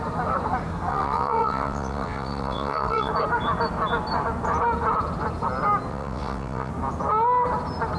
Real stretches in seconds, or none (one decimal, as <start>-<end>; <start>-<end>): 0.0-0.9; 3.1-5.9; 6.7-8.0